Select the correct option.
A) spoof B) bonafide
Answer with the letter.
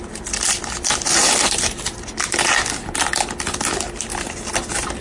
B